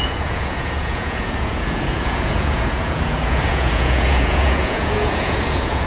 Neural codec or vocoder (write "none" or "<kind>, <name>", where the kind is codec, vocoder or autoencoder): vocoder, Vocos